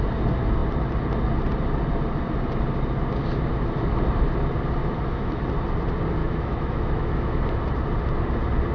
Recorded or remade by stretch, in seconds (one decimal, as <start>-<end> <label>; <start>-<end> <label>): 0.0-4.8 recorded; 4.8-5.4 remade; 5.4-6.2 recorded; 6.2-7.3 remade; 7.3-8.7 recorded